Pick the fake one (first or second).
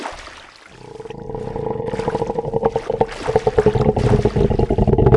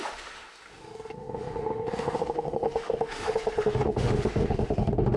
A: second